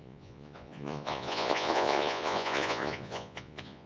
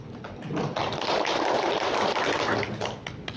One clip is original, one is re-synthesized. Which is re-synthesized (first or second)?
first